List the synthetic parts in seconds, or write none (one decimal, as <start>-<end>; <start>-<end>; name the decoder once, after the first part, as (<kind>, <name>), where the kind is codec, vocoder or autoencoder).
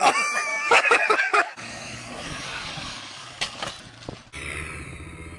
0.5-3.7 (codec, DAC)